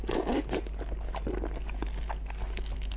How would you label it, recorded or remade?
recorded